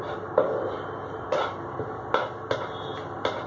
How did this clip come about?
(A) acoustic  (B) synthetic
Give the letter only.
A